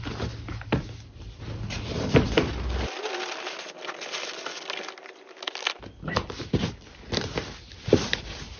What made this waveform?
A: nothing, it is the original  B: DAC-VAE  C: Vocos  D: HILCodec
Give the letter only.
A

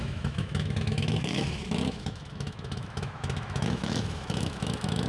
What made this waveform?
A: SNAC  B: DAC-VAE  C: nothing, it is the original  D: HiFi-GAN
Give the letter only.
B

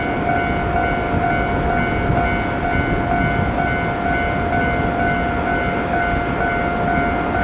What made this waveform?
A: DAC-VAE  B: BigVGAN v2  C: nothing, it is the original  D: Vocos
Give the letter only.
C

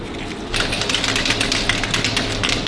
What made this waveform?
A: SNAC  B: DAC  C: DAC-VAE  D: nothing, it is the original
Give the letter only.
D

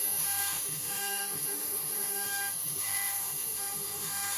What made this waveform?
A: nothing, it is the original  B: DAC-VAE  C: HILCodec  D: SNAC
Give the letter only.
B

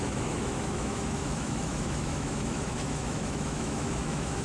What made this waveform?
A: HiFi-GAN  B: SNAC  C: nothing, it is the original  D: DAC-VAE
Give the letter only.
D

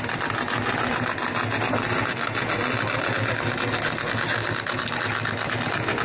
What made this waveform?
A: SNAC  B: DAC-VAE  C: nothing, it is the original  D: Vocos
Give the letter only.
C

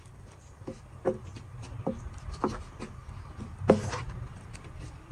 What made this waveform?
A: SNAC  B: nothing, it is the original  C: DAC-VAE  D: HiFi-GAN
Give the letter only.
B